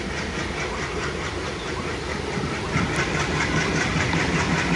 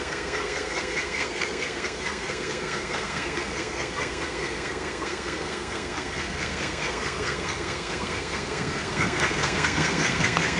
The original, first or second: first